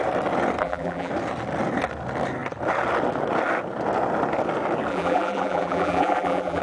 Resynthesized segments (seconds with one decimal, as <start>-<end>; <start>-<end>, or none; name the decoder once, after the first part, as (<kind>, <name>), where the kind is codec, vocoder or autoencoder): 0.6-1.1 (vocoder, BigVGAN v2); 4.9-6.6

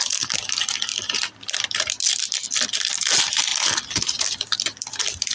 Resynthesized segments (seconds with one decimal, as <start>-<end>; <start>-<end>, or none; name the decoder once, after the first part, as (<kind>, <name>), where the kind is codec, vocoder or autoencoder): 0.0-5.3 (vocoder, BigVGAN v2)

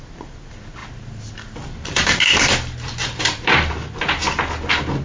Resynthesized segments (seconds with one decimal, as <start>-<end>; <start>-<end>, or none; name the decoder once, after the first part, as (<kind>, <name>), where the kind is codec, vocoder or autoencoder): 0.8-3.7 (vocoder, BigVGAN v2)

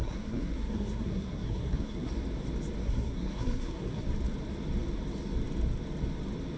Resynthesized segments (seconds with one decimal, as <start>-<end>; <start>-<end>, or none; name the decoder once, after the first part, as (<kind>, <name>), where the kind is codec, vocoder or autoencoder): 0.0-2.1 (codec, SNAC); 2.8-4.0

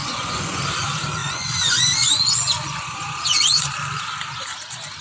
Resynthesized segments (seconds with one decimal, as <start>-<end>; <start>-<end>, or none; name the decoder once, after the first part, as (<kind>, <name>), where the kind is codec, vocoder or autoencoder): 0.0-0.6 (vocoder, Vocos); 1.2-3.7